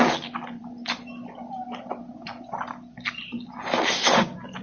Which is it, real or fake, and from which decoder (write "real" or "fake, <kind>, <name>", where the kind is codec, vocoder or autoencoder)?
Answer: real